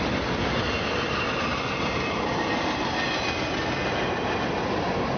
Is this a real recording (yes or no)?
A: yes